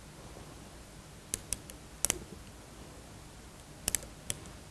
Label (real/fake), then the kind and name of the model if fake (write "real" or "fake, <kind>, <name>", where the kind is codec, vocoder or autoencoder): real